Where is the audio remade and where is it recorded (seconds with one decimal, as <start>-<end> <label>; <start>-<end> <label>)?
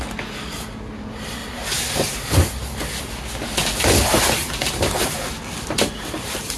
0.0-6.6 recorded